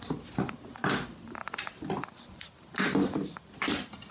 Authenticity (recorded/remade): recorded